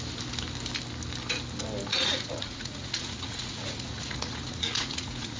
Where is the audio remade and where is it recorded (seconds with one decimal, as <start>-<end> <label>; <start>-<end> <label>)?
0.0-1.9 recorded; 1.9-5.4 remade